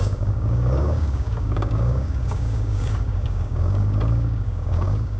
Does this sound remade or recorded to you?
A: remade